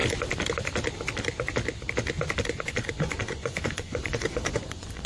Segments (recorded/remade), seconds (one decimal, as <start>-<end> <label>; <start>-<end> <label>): 0.0-2.6 recorded; 2.6-5.1 remade